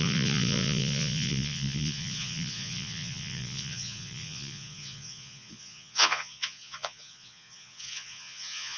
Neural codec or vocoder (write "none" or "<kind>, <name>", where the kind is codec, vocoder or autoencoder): vocoder, Vocos